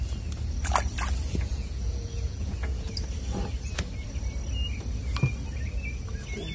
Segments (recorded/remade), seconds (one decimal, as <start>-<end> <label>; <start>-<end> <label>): 0.0-1.5 recorded; 1.5-2.9 remade; 2.9-6.5 recorded